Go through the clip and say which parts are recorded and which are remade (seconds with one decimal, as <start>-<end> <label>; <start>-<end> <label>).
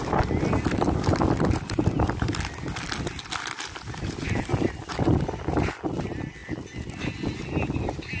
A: 0.0-8.2 recorded